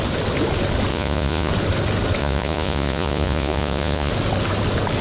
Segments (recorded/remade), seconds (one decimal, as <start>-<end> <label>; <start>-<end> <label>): 0.0-0.9 recorded; 0.9-1.5 remade; 1.5-2.2 recorded; 2.2-4.1 remade; 4.1-5.0 recorded